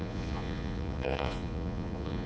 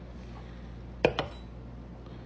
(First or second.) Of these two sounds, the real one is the second